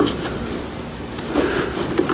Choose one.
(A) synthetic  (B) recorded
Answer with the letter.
B